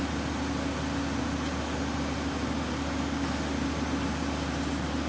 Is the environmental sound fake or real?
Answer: real